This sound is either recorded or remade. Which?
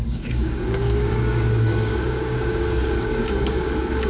remade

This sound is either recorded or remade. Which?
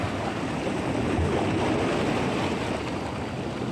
recorded